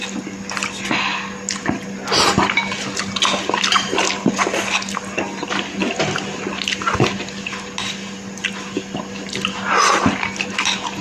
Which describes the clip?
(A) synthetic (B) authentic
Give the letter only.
B